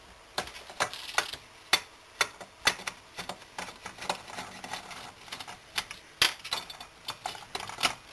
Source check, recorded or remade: recorded